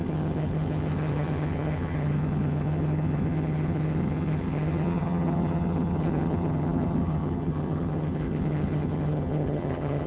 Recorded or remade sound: remade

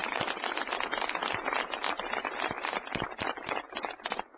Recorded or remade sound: recorded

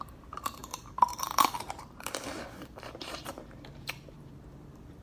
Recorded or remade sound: remade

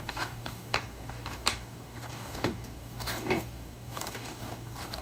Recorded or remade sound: remade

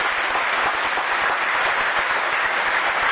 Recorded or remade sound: recorded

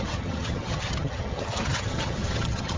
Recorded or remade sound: remade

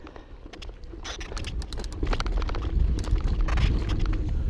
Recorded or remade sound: recorded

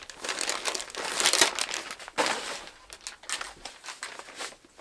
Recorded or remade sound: recorded